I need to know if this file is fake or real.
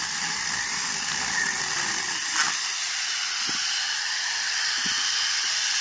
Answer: real